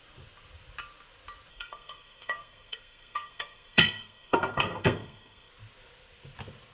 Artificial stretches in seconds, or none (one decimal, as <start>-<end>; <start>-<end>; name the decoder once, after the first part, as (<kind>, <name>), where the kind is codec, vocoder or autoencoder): 1.5-5.5 (codec, SNAC)